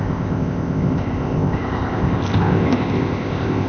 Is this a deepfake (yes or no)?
yes